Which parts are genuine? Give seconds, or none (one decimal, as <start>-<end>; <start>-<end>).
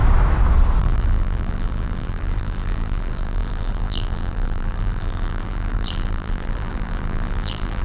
0.0-0.8